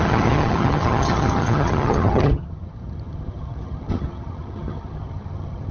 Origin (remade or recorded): remade